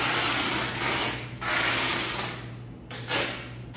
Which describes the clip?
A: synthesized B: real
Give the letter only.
B